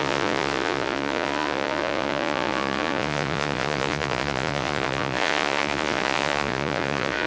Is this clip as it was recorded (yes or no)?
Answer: no